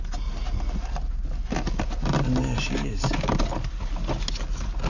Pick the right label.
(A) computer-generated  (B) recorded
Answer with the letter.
B